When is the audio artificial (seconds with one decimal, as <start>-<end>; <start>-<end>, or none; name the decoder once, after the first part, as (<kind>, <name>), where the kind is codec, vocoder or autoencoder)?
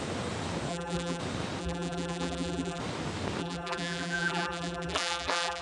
0.7-1.2 (vocoder, BigVGAN v2); 1.6-2.8; 3.4-5.6